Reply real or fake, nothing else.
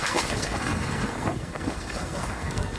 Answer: fake